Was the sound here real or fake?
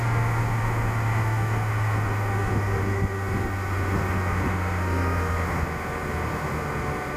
fake